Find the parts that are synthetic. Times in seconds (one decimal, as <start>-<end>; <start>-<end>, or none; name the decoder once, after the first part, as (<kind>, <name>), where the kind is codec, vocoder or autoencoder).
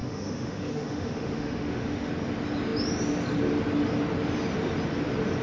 0.0-2.1 (autoencoder, DAC-VAE)